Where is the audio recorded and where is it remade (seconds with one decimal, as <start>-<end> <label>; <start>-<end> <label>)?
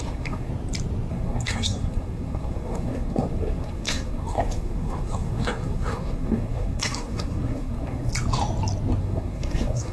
0.0-0.5 remade; 0.5-1.1 recorded; 1.1-8.1 remade; 8.1-9.0 recorded; 9.0-9.9 remade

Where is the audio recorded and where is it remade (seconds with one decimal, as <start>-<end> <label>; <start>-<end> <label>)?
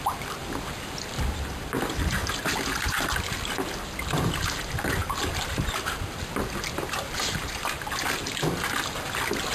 0.0-9.5 recorded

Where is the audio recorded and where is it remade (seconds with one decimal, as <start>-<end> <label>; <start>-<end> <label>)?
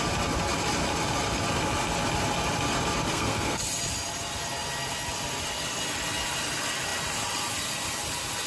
0.0-3.1 recorded; 3.1-3.6 remade; 3.6-8.5 recorded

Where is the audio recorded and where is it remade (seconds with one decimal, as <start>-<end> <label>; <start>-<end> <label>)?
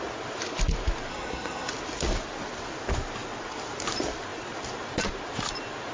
0.0-1.1 recorded; 1.1-1.7 remade; 1.7-5.9 recorded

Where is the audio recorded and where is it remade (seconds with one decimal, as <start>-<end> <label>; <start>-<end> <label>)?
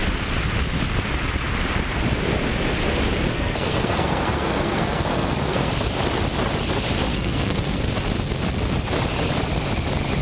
0.0-3.3 recorded; 3.3-5.7 remade; 5.7-7.1 recorded; 7.1-7.8 remade; 7.8-10.2 recorded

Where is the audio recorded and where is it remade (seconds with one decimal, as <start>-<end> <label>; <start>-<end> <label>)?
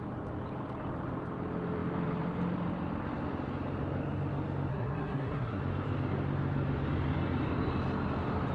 0.0-4.7 recorded; 4.7-5.6 remade; 5.6-8.5 recorded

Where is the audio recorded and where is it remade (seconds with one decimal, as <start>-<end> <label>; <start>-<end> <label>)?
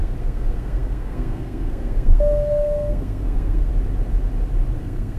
0.0-3.7 remade; 3.7-4.8 recorded; 4.8-5.2 remade